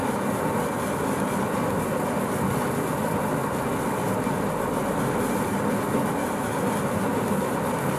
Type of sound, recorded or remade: recorded